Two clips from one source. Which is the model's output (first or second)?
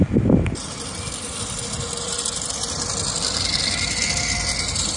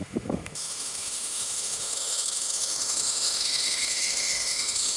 second